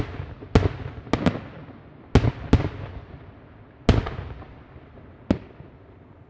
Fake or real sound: real